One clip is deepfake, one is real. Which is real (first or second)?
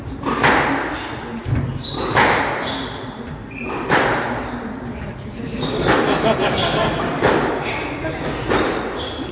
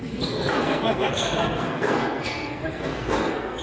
first